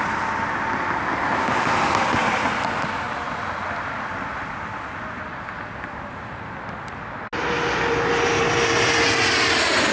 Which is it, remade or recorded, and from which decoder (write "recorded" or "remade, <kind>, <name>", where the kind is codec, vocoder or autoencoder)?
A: recorded